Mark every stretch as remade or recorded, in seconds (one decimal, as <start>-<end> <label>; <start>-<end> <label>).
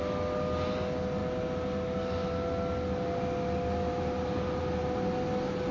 0.0-5.7 recorded